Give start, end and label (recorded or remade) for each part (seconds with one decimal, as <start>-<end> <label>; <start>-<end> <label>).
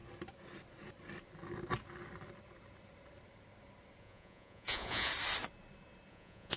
0.0-4.0 recorded; 4.0-5.1 remade; 5.1-6.1 recorded; 6.1-6.6 remade